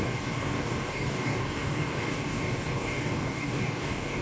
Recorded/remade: remade